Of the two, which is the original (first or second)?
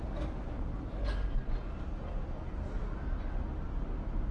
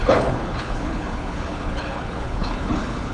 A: first